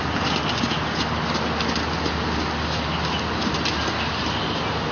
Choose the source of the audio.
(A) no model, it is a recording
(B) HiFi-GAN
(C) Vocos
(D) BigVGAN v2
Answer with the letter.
A